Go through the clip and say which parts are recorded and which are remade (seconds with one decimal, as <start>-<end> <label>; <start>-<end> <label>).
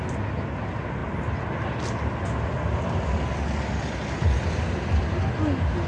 0.0-5.9 recorded